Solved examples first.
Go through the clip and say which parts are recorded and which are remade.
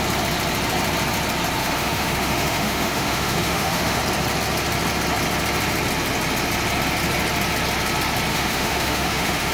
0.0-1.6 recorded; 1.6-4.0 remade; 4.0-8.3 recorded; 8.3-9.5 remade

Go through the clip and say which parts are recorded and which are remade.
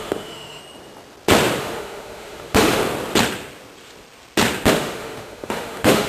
0.0-0.6 remade; 0.6-1.6 recorded; 1.6-2.8 remade; 2.8-4.7 recorded; 4.7-6.1 remade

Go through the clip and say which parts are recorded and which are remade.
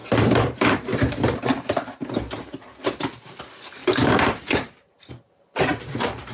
0.0-2.1 remade; 2.1-3.8 recorded; 3.8-5.1 remade; 5.1-6.3 recorded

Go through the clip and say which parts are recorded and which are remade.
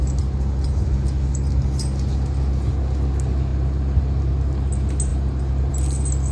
0.0-6.3 recorded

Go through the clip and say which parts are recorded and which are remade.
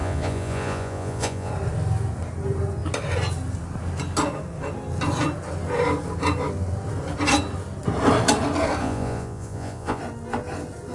0.0-1.5 remade; 1.5-8.8 recorded; 8.8-10.0 remade; 10.0-10.9 recorded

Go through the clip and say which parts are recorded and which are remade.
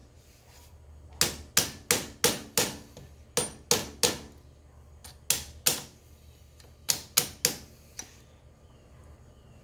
0.0-9.6 recorded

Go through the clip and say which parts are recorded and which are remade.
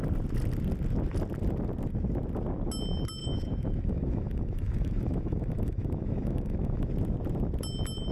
0.0-3.2 recorded; 3.2-6.9 remade; 6.9-8.1 recorded